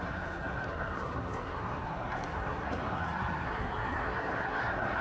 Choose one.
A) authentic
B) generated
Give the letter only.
B